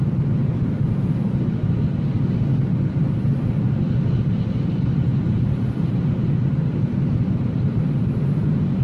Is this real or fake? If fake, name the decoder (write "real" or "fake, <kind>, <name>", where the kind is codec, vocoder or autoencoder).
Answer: real